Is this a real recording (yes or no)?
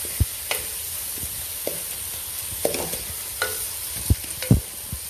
yes